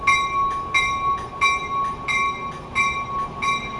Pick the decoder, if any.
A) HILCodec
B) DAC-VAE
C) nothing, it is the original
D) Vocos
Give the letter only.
C